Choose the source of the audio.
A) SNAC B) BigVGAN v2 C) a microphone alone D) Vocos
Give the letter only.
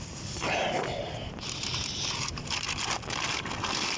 C